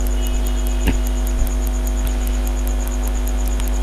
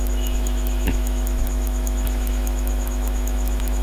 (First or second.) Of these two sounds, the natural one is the first